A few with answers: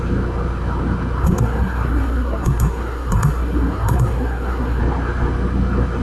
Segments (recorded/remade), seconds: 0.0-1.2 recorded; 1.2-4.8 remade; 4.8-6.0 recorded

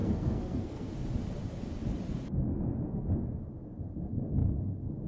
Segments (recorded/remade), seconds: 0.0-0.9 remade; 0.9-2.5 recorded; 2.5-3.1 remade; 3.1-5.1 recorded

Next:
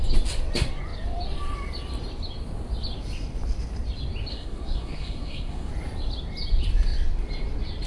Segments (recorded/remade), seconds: 0.0-4.3 recorded; 4.3-5.7 remade; 5.7-7.9 recorded

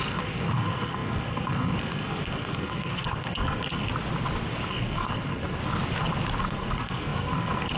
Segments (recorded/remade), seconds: 0.0-3.9 remade; 3.9-4.7 recorded; 4.7-5.6 remade; 5.6-6.4 recorded; 6.4-7.8 remade

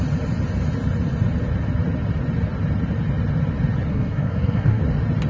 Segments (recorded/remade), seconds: 0.0-3.9 recorded; 3.9-4.8 remade; 4.8-5.3 recorded

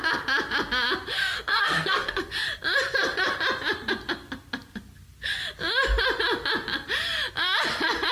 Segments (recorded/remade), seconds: 0.0-1.1 recorded; 1.1-2.2 remade; 2.2-8.1 recorded

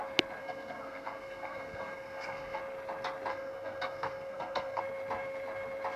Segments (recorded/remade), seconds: 0.0-0.4 recorded; 0.4-2.6 remade; 2.6-3.3 recorded; 3.3-4.8 remade; 4.8-6.0 recorded